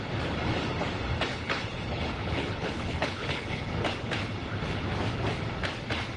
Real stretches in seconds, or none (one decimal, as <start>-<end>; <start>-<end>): 0.0-1.3; 3.6-6.2